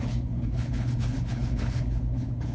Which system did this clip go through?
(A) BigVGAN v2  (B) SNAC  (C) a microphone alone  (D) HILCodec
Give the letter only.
D